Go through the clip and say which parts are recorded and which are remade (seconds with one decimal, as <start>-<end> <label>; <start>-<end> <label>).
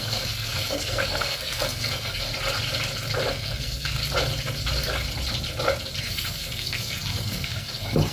0.0-2.3 remade; 2.3-3.3 recorded; 3.3-4.0 remade; 4.0-6.0 recorded; 6.0-8.1 remade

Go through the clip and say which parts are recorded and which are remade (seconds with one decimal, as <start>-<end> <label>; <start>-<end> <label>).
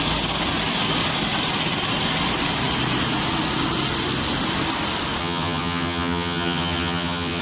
0.0-5.2 recorded; 5.2-7.4 remade